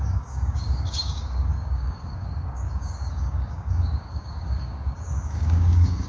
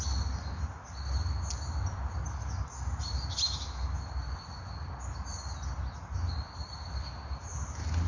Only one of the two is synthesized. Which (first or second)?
first